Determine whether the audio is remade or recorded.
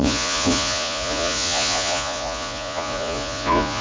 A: remade